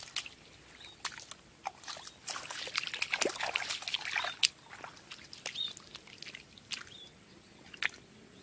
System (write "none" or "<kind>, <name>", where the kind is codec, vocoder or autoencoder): none